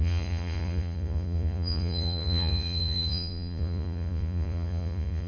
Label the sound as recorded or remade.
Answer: remade